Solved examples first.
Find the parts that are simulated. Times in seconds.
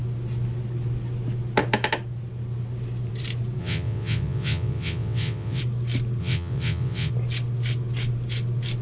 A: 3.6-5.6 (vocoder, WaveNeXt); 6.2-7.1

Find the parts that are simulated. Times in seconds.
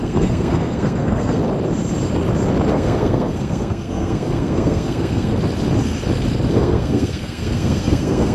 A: 0.0-1.4 (codec, SNAC); 2.7-5.3; 6.5-8.3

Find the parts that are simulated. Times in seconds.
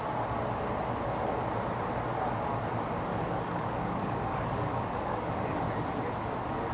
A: 3.1-5.6 (codec, DAC)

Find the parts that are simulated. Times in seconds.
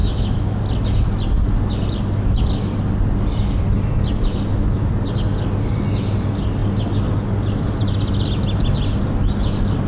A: 0.0-0.6 (autoencoder, DAC-VAE)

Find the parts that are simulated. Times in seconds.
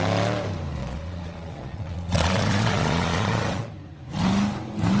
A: 0.8-3.7 (vocoder, Vocos)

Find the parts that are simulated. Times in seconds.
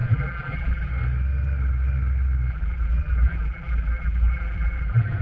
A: 0.0-0.9 (vocoder, BigVGAN v2); 2.5-5.2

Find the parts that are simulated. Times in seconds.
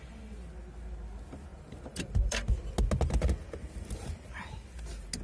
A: 1.5-2.5 (vocoder, BigVGAN v2)